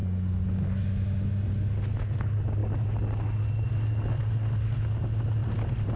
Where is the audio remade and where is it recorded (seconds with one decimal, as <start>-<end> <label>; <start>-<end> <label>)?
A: 0.0-5.4 recorded; 5.4-6.0 remade